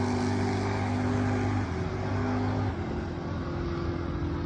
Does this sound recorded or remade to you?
recorded